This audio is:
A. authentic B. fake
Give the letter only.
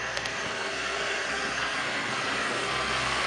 B